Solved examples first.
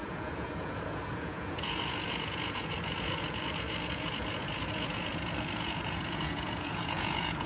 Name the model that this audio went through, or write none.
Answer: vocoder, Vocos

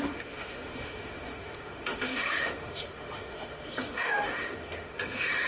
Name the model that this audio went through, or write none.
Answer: autoencoder, DAC-VAE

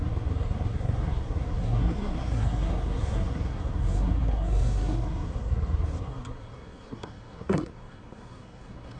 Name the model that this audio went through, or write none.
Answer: codec, SNAC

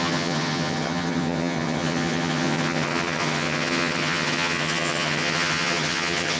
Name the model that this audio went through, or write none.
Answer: vocoder, HiFi-GAN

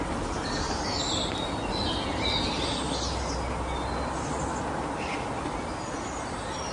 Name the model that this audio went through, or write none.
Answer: none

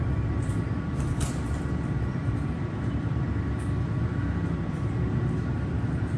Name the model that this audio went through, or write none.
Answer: vocoder, BigVGAN v2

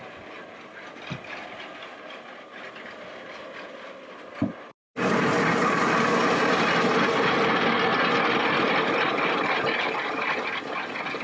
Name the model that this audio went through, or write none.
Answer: none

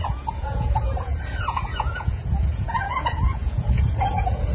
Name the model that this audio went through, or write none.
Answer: vocoder, Vocos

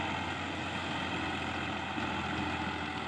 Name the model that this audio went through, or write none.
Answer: none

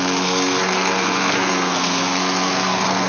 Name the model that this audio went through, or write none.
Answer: codec, SNAC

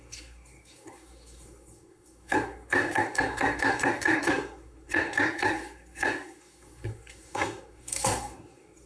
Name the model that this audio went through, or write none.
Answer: codec, SNAC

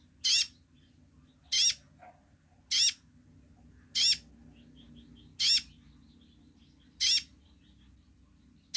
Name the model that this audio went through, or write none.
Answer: none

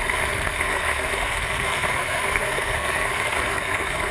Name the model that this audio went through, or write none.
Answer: codec, SNAC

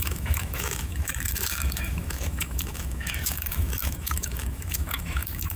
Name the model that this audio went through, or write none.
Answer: autoencoder, DAC-VAE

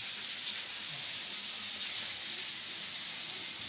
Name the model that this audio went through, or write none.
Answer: none